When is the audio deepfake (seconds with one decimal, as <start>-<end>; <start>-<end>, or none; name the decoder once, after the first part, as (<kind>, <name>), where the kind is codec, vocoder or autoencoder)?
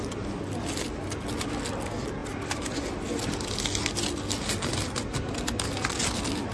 none